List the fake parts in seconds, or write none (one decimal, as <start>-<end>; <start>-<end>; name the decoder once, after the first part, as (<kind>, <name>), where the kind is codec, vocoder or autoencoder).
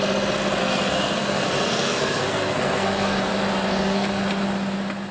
0.6-3.3 (codec, SNAC); 3.7-4.2